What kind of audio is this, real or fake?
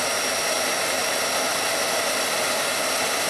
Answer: real